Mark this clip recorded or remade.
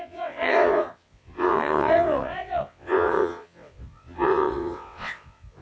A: remade